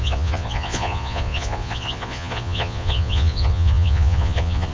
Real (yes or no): no